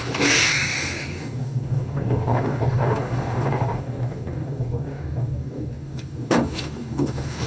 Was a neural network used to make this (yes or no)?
yes